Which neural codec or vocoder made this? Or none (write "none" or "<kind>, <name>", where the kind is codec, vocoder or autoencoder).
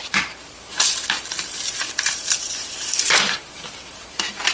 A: vocoder, BigVGAN v2